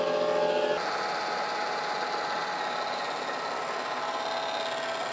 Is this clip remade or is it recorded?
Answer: recorded